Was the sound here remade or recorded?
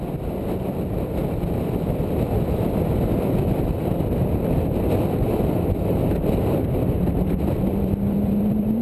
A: remade